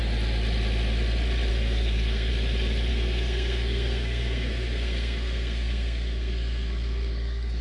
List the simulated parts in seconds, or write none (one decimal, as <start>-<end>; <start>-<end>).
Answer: 1.5-2.3; 2.9-7.6